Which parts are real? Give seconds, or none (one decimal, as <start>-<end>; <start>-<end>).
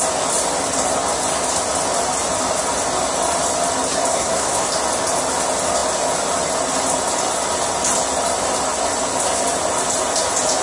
0.0-4.1; 4.7-10.6